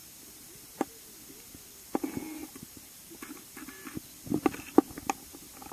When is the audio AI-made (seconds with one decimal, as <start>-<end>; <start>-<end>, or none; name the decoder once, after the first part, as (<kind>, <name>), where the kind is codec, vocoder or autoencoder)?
none